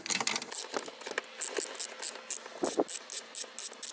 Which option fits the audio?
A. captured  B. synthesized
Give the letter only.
A